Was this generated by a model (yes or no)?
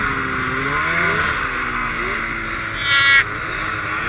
no